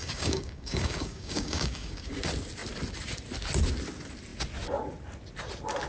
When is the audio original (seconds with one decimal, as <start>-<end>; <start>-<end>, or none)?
2.1-5.9